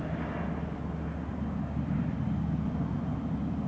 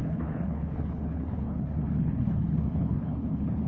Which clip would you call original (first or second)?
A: first